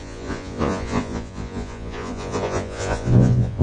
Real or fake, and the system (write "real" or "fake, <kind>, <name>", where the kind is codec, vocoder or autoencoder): fake, vocoder, Vocos